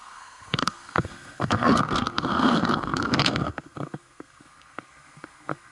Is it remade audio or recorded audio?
remade